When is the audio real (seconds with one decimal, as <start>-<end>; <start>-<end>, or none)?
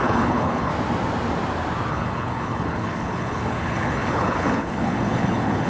0.7-1.9